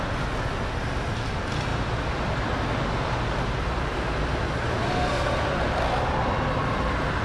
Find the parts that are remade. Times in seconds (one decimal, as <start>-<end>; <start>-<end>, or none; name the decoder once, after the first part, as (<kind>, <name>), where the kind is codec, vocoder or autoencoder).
none